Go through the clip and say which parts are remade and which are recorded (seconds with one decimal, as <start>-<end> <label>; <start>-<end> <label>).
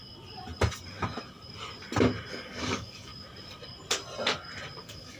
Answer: 0.0-2.3 recorded; 2.3-3.1 remade; 3.1-4.8 recorded; 4.8-5.2 remade